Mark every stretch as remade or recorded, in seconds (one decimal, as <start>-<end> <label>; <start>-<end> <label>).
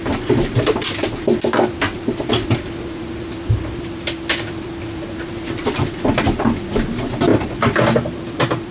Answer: 0.0-8.7 recorded